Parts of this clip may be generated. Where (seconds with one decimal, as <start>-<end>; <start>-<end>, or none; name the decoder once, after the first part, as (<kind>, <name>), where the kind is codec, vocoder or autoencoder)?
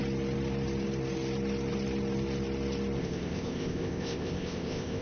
3.0-5.0 (codec, ZipCodec)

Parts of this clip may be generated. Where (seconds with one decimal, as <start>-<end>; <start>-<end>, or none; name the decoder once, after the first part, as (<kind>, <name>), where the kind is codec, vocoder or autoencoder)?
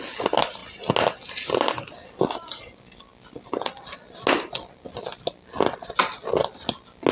none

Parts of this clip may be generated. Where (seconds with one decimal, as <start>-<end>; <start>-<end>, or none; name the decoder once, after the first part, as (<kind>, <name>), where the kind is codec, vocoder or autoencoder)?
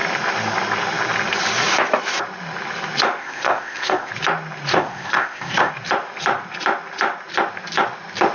3.2-4.1 (codec, ZipCodec); 4.7-5.7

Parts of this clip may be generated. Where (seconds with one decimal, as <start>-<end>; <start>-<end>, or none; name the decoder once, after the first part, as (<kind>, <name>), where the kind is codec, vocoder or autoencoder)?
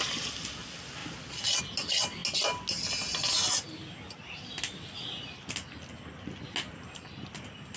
none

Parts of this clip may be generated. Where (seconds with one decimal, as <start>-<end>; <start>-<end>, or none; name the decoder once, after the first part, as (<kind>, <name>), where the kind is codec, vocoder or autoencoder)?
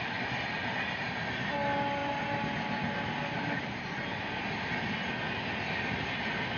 none